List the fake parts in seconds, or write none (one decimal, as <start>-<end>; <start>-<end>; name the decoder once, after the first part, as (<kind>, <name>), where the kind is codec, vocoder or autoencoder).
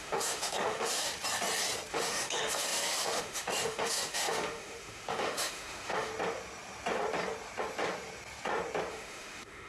0.0-1.1 (autoencoder, DAC-VAE); 1.9-6.1; 8.9-9.7